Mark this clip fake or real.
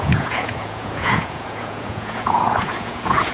fake